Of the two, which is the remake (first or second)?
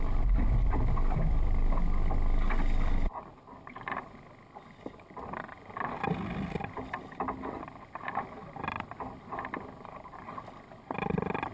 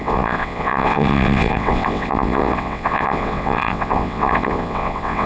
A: second